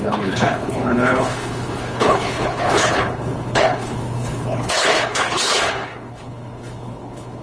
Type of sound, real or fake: fake